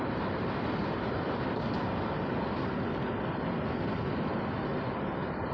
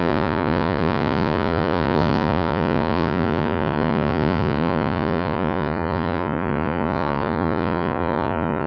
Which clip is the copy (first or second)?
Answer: second